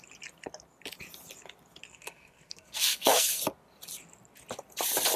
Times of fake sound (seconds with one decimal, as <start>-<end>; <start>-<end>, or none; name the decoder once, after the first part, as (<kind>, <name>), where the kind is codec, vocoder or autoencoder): 1.9-3.4 (codec, SNAC)